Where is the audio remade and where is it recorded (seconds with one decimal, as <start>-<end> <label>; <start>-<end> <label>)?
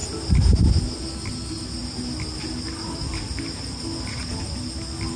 0.0-5.2 recorded